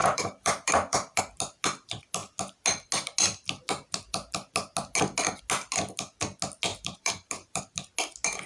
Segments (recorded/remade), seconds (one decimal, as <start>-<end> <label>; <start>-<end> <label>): 0.0-1.2 remade; 1.2-6.7 recorded; 6.7-7.6 remade; 7.6-8.5 recorded